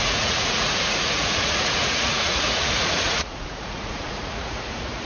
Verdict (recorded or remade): remade